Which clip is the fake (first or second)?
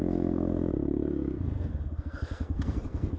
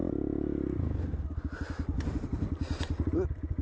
first